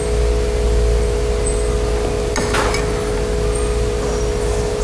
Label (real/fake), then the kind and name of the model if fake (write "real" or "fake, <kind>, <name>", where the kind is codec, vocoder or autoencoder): real